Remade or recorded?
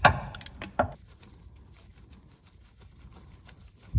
recorded